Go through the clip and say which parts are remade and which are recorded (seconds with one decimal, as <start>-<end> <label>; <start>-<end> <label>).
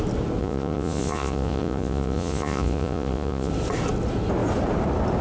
0.0-0.4 recorded; 0.4-3.5 remade; 3.5-5.2 recorded